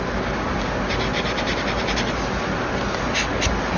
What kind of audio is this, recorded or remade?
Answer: recorded